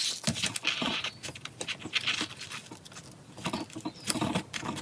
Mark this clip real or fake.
real